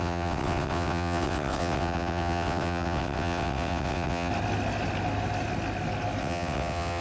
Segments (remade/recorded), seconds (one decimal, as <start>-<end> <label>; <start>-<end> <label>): 0.0-4.3 remade; 4.3-6.2 recorded; 6.2-7.0 remade